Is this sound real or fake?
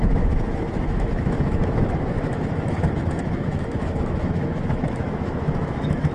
fake